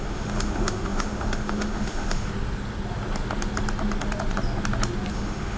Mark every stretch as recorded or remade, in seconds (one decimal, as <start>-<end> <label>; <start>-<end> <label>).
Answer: 0.0-2.3 remade; 2.3-5.1 recorded; 5.1-5.6 remade